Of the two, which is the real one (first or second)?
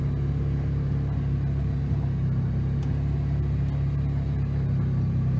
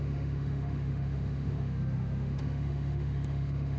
first